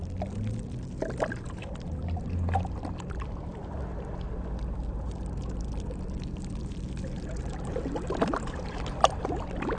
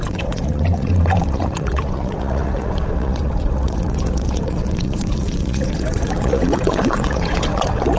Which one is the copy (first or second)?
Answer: second